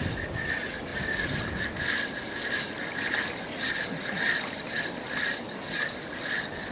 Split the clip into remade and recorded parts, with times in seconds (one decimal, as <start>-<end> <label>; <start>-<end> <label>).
0.0-6.7 recorded